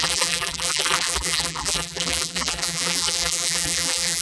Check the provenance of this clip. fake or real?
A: fake